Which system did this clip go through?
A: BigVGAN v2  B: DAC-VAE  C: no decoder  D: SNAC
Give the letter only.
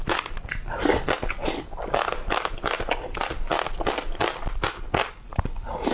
C